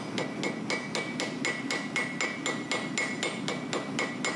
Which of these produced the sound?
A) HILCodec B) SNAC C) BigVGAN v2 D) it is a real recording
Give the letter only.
D